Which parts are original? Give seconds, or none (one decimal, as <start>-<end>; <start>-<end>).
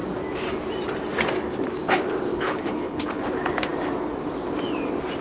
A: 0.0-2.3; 3.2-5.2